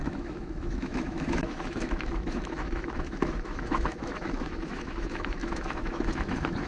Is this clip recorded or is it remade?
remade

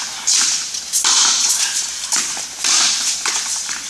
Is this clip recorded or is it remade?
recorded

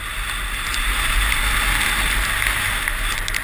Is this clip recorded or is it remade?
recorded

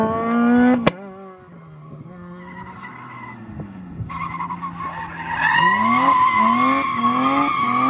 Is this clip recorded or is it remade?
recorded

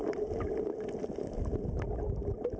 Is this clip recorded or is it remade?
recorded